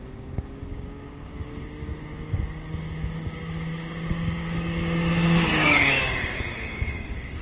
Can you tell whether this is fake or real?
fake